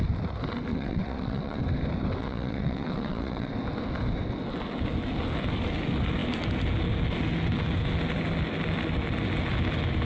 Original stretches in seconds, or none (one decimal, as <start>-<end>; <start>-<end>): 0.0-0.7; 1.6-2.2; 3.5-10.0